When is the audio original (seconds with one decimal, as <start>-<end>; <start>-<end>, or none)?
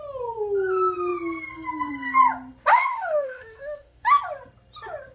0.0-2.7; 4.2-5.1